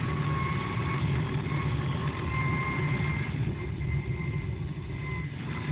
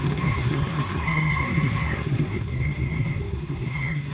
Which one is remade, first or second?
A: second